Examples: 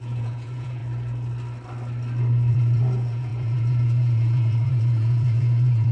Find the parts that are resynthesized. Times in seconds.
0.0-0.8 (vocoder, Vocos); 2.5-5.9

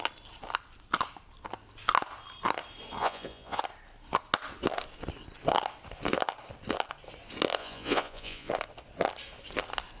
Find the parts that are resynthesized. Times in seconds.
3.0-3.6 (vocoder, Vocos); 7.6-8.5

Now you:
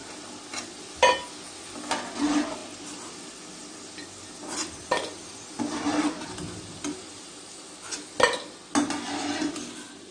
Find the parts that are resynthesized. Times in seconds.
none

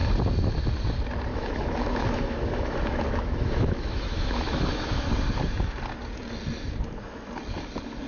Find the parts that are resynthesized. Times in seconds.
1.3-5.0 (autoencoder, DAC-VAE)

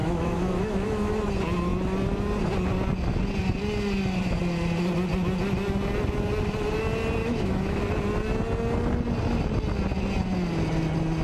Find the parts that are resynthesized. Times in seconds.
0.0-1.1 (autoencoder, DAC-VAE); 7.2-7.8